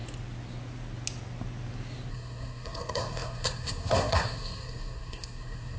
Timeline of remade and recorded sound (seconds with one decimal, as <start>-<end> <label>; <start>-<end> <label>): 0.0-2.1 recorded; 2.1-5.8 remade